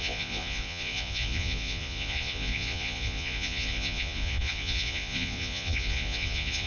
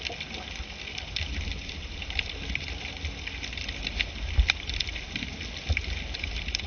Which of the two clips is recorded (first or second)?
second